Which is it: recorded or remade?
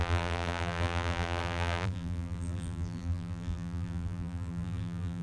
remade